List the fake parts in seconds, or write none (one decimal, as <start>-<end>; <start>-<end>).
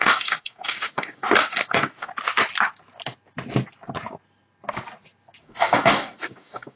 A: 0.0-2.1; 5.4-6.8